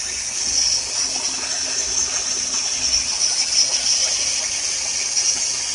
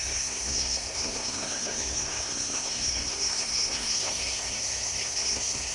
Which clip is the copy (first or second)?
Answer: second